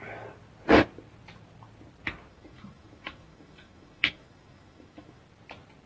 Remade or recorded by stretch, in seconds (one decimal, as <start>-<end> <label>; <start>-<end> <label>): 0.0-2.3 recorded; 2.3-5.2 remade; 5.2-5.9 recorded